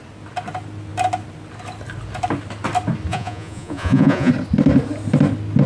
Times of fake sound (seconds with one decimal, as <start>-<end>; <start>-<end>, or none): 3.1-4.3